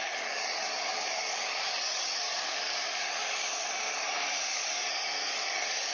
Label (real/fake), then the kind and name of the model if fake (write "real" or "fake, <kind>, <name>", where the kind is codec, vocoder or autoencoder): fake, codec, DAC